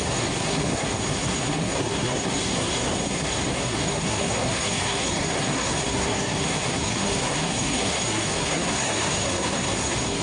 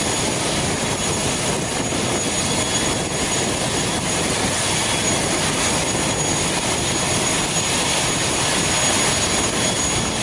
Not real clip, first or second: first